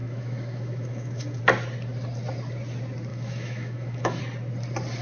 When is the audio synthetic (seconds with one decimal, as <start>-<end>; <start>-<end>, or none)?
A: 0.0-1.4; 3.1-4.2